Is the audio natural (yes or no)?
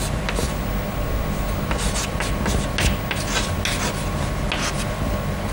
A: yes